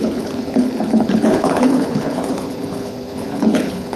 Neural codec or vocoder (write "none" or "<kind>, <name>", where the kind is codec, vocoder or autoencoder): codec, HILCodec